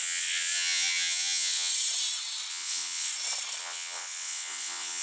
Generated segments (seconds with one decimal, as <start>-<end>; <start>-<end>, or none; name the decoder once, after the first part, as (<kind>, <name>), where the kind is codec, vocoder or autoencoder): 0.0-1.7 (vocoder, WaveNeXt); 2.5-3.1; 3.6-5.0